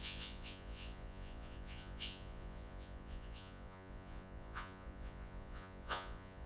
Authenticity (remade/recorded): remade